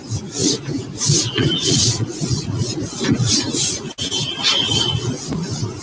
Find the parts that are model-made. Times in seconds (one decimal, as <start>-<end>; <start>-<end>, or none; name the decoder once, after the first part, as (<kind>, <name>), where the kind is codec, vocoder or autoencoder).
0.4-3.9 (vocoder, Vocos); 4.6-5.8